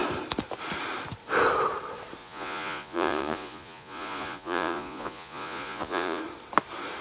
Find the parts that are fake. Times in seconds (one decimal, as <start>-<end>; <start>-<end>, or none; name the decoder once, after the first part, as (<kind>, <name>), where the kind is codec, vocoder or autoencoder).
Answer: 2.2-6.2 (vocoder, Vocos)